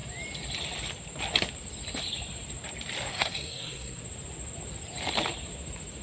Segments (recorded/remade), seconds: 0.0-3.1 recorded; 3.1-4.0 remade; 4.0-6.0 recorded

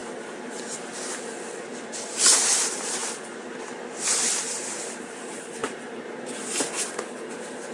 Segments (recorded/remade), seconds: 0.0-2.1 recorded; 2.1-3.0 remade; 3.0-4.0 recorded; 4.0-7.7 remade

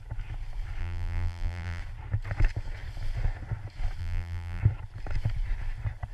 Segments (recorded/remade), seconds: 0.0-0.8 recorded; 0.8-1.8 remade; 1.8-4.0 recorded; 4.0-4.6 remade; 4.6-6.1 recorded

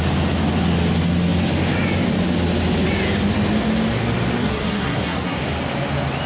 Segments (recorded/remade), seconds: 0.0-4.4 recorded; 4.4-5.4 remade; 5.4-6.3 recorded

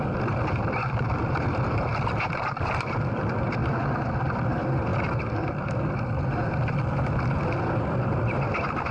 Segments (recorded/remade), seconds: 0.0-3.6 remade; 3.6-4.4 recorded; 4.4-4.9 remade; 4.9-5.7 recorded; 5.7-8.9 remade

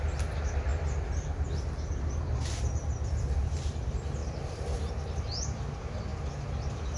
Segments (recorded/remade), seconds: 0.0-7.0 recorded

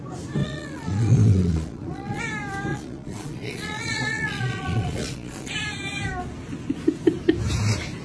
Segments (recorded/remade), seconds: 0.0-0.4 recorded; 0.4-2.2 remade; 2.2-2.7 recorded; 2.7-5.5 remade; 5.5-8.0 recorded